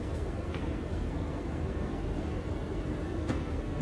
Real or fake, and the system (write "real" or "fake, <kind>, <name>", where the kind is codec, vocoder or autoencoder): fake, codec, SNAC